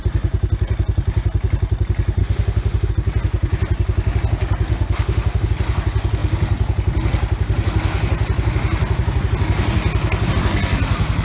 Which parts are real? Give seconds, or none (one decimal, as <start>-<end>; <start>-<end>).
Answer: 0.0-2.2; 2.9-4.7; 5.5-11.2